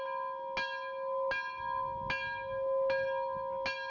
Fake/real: real